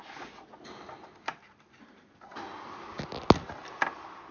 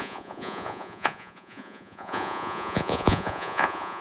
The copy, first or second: second